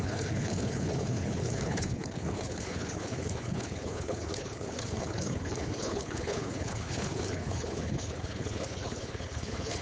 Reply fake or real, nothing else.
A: fake